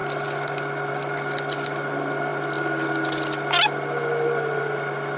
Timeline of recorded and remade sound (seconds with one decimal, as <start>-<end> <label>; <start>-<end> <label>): 0.0-5.2 recorded